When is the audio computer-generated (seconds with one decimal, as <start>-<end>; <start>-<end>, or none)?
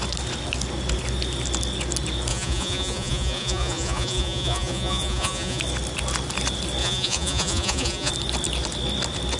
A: 2.3-5.6; 6.8-8.1